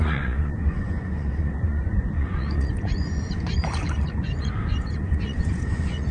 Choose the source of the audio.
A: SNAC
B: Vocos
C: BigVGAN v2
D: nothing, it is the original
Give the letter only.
B